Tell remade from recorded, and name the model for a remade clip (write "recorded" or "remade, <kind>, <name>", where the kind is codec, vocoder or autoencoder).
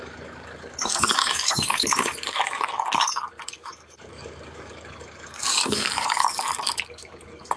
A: remade, codec, DAC